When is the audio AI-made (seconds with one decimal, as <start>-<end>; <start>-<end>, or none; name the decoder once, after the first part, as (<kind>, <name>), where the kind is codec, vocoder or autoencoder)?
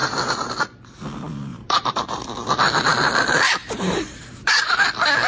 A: 0.0-0.6 (vocoder, BigVGAN v2); 1.5-2.5; 3.6-4.5